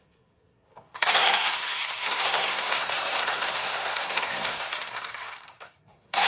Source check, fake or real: fake